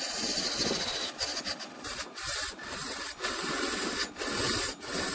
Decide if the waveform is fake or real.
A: real